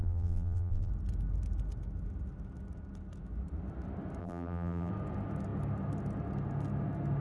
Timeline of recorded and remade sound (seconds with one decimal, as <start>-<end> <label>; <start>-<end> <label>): 0.0-0.9 remade; 0.9-4.2 recorded; 4.2-4.9 remade; 4.9-7.2 recorded